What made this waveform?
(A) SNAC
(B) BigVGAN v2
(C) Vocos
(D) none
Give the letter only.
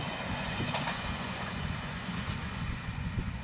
C